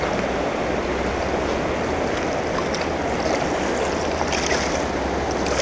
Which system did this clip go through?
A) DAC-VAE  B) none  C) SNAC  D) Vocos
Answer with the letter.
B